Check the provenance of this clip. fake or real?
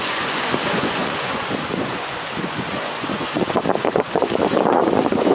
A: fake